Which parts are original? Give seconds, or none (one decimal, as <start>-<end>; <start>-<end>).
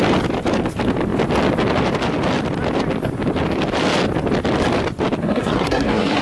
0.0-5.2